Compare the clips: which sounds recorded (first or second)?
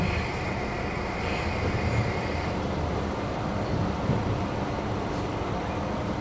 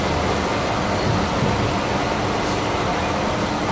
second